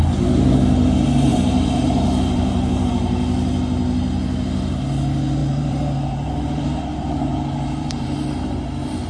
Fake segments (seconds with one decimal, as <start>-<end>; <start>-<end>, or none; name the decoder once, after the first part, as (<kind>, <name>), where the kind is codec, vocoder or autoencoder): 1.3-2.9 (vocoder, BigVGAN v2); 5.4-6.7; 7.3-8.3